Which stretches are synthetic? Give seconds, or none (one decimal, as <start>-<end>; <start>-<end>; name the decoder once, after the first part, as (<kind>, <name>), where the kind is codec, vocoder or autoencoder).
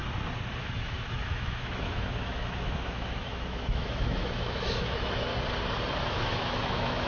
0.6-5.3 (autoencoder, DAC-VAE); 6.0-7.1